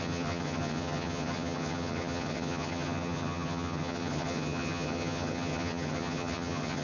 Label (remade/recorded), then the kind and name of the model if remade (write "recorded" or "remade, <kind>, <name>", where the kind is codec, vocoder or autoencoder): remade, vocoder, HiFi-GAN